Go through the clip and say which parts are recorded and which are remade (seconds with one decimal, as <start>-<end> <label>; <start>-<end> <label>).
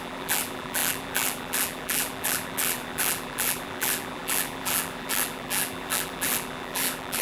0.0-7.2 remade